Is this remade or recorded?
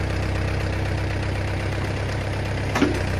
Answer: remade